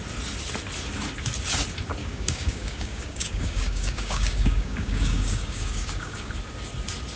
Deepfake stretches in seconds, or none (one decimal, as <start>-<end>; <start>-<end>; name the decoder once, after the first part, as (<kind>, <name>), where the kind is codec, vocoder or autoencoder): 2.0-6.3 (codec, DAC)

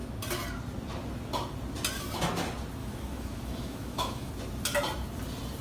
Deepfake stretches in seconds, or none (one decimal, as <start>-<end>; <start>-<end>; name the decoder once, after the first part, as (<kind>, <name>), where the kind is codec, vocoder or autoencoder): 2.8-4.3 (autoencoder, DAC-VAE)

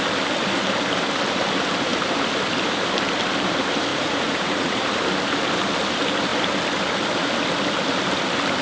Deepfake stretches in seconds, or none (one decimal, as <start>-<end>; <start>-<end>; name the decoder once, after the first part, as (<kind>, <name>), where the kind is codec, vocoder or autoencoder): 3.9-4.8 (vocoder, Vocos)